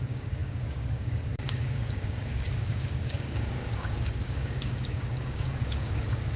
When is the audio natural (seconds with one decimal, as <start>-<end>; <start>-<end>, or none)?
none